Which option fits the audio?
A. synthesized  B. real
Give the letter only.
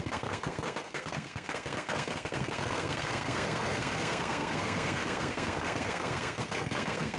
A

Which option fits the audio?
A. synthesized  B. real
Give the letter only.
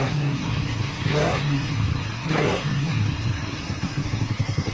A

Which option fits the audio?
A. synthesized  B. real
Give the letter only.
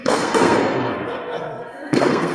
A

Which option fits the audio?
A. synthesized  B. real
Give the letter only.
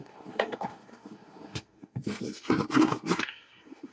A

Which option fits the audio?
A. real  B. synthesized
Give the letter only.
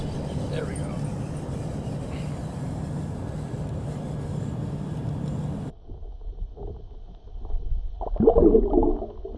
A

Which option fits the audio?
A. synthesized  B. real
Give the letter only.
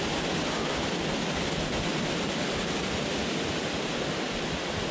B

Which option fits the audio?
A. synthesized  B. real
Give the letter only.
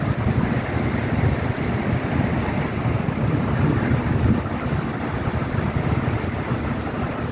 B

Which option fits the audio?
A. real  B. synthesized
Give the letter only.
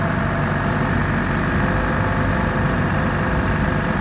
A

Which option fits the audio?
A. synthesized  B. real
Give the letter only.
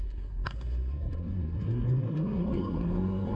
A